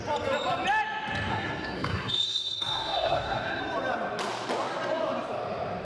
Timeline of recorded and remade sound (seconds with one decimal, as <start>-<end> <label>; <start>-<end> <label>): 0.0-1.3 recorded; 1.3-3.6 remade; 3.6-5.8 recorded